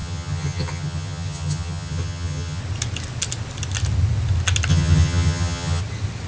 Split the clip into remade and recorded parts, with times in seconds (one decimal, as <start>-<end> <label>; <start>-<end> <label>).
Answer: 0.0-2.6 remade; 2.6-4.7 recorded; 4.7-5.8 remade; 5.8-6.3 recorded